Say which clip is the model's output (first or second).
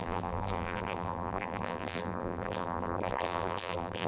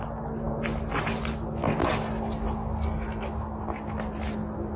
first